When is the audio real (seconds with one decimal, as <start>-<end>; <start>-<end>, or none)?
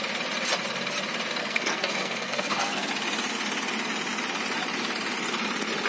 0.0-1.4; 2.9-5.9